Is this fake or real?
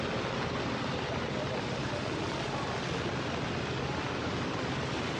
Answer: real